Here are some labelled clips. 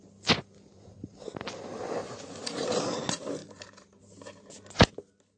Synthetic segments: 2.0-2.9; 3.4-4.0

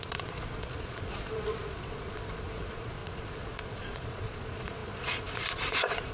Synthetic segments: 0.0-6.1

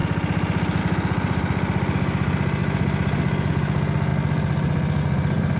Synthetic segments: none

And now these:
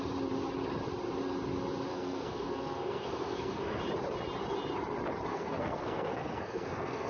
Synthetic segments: 1.9-3.8; 5.3-7.1

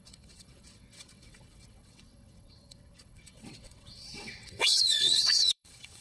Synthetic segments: 0.0-6.0

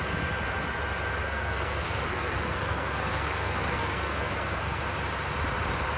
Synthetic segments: 1.2-4.8

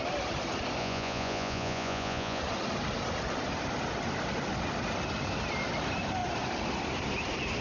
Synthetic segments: 0.8-2.4